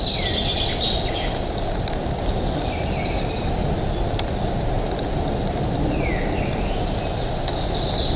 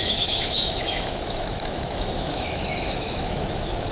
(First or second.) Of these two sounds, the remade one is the second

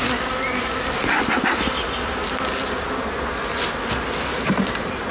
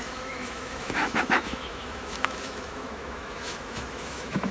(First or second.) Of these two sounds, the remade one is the second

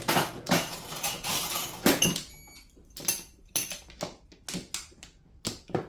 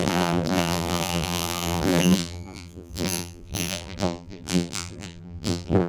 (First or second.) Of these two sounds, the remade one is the second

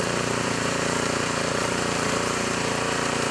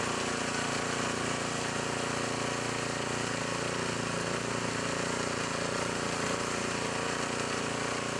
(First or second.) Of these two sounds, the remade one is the first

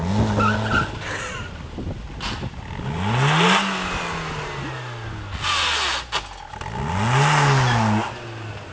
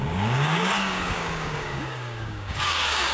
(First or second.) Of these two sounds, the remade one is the second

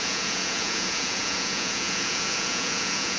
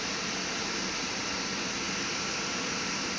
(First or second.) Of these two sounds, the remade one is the first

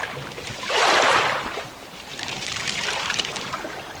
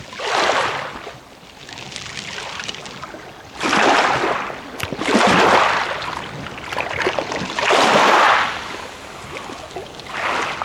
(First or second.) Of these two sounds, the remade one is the first